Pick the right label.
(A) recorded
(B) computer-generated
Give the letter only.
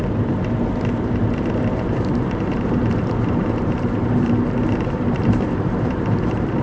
B